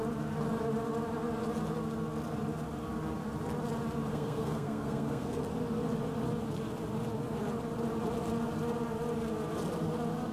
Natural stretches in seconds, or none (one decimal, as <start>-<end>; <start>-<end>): 0.0-4.1; 5.4-10.3